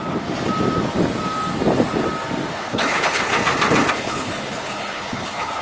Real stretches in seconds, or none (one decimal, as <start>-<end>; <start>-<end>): 0.0-2.5; 3.3-3.9